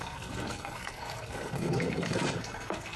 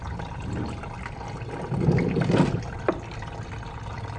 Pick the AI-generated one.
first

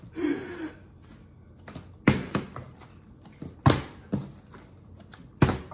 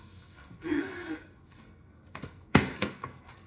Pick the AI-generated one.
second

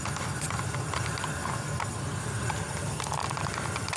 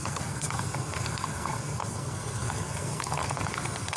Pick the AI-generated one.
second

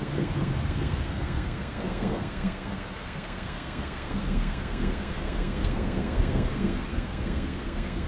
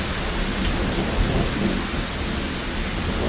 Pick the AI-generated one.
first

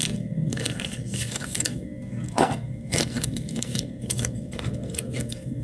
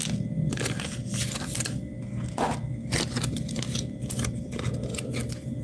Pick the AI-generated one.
first